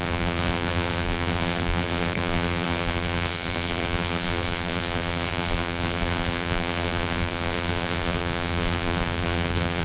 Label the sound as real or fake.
fake